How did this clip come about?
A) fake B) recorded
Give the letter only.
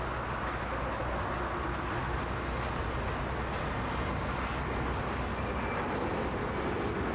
B